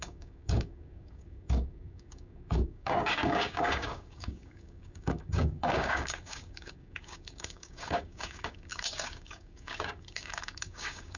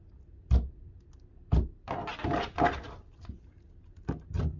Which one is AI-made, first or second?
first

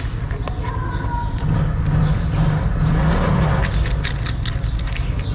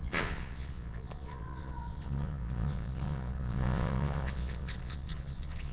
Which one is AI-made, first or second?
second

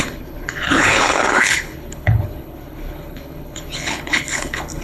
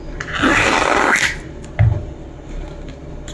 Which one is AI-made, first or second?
first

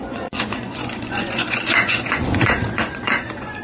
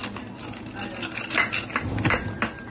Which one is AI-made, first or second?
first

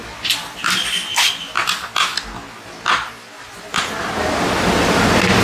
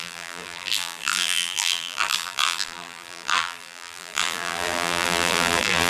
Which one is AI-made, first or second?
second